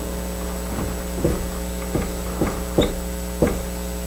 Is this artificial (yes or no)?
no